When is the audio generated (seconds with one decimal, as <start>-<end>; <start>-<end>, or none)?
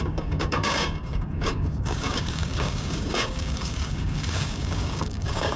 0.0-5.6